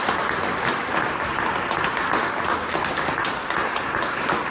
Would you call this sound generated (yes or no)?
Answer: no